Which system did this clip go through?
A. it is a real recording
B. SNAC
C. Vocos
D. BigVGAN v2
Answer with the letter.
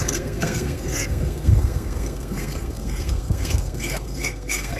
B